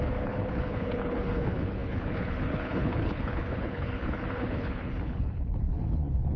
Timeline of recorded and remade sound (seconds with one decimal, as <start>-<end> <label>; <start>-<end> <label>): 0.0-6.4 remade